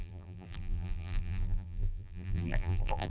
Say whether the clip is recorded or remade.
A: remade